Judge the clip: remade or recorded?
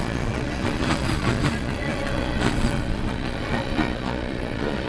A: remade